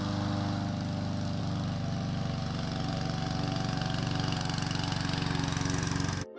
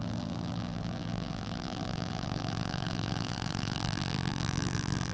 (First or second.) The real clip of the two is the first